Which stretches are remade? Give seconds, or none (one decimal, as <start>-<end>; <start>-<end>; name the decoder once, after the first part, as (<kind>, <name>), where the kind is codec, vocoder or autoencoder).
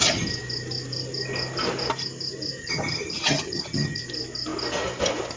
2.6-4.0 (vocoder, HiFi-GAN)